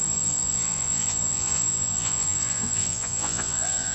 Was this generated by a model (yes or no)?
yes